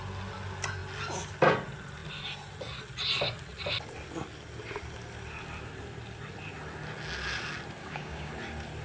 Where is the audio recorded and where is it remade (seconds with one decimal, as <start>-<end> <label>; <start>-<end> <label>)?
0.0-7.8 recorded; 7.8-8.3 remade; 8.3-8.8 recorded